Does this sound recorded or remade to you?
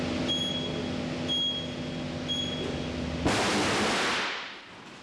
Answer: recorded